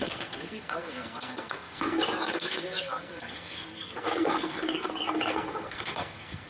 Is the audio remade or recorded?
remade